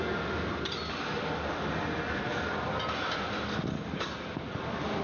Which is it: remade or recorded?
recorded